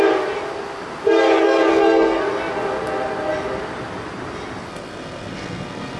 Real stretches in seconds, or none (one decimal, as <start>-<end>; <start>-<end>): 0.0-1.7; 2.2-4.7